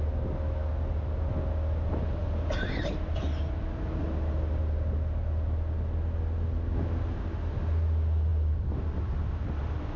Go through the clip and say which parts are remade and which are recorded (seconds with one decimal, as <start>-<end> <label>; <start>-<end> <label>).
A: 0.0-8.3 recorded; 8.3-10.0 remade